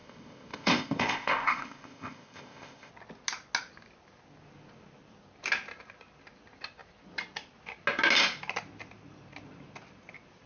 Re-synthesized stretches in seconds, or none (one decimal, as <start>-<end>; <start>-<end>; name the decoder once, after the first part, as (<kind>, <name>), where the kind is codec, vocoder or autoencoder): 0.0-2.9 (codec, ZipCodec)